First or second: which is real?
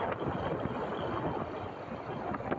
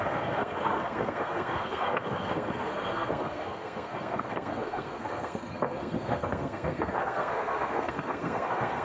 first